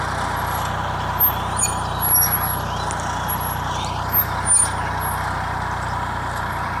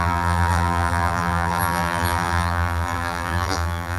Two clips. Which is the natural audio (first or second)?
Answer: first